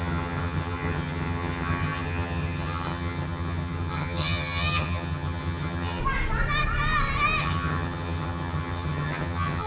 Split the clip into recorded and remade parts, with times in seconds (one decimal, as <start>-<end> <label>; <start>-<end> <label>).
0.0-6.0 remade; 6.0-7.4 recorded; 7.4-9.7 remade